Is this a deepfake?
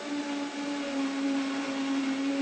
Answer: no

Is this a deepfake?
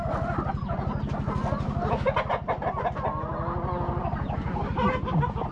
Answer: no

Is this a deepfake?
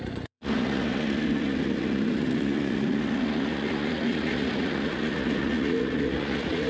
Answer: yes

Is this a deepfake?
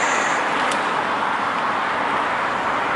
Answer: no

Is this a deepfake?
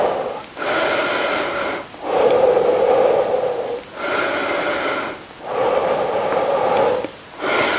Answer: no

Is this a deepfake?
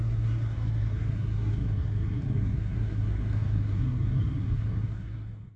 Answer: yes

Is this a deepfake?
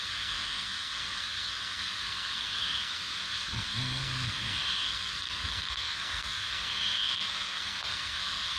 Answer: yes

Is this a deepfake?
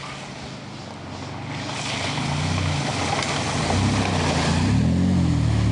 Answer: no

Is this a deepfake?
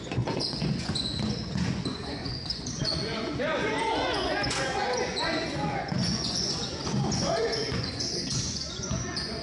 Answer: yes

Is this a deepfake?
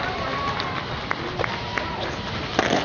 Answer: no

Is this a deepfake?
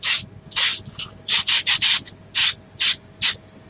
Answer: no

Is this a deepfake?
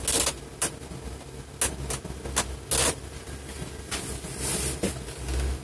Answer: no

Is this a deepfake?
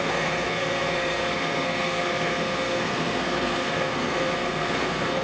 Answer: yes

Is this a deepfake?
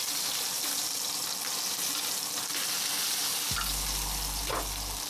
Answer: no